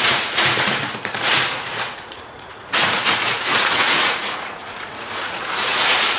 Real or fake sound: fake